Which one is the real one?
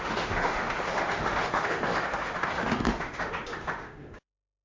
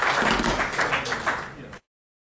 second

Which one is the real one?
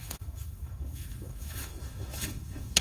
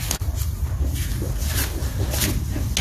second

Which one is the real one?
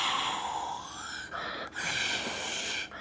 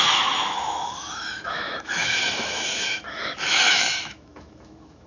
first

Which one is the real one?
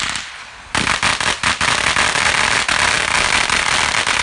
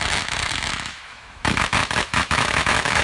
first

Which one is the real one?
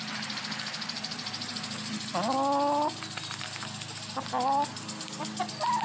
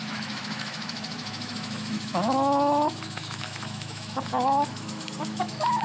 first